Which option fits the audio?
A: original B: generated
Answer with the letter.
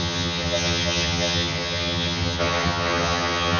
B